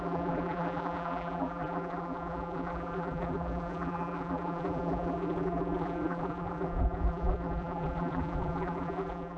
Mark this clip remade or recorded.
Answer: remade